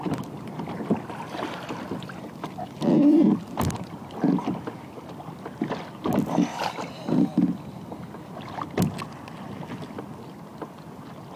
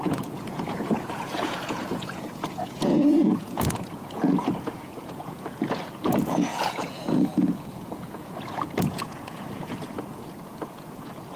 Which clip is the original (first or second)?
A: first